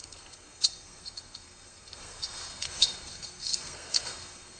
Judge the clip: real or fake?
fake